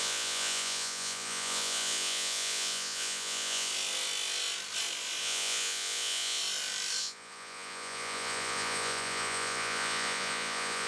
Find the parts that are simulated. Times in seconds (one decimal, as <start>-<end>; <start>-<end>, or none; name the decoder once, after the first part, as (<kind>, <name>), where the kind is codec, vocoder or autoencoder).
0.0-3.7 (vocoder, Vocos); 5.2-6.4; 7.0-10.9